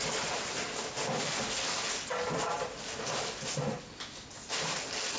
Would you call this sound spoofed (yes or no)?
no